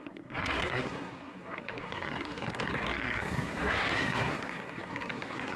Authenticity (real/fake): fake